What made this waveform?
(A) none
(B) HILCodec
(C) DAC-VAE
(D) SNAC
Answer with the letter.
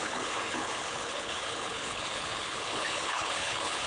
B